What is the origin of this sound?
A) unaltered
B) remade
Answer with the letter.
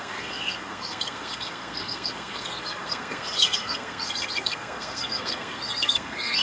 B